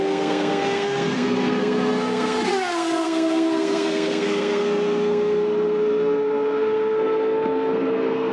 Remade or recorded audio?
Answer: remade